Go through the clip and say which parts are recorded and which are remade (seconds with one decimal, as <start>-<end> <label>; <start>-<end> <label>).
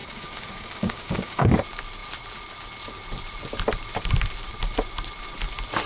0.0-1.5 remade; 1.5-5.9 recorded